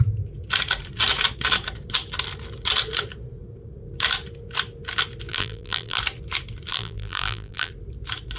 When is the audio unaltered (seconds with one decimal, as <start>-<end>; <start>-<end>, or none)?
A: 0.0-5.3; 6.0-6.7; 7.7-8.4